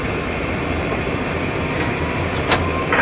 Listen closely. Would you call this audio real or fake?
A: real